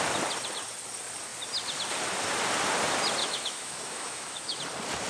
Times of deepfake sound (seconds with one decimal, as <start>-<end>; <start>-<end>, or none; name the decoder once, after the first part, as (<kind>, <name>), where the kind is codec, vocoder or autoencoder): 3.2-4.6 (autoencoder, DAC-VAE)